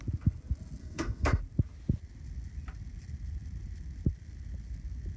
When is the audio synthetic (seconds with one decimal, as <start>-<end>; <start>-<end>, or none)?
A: 0.8-1.4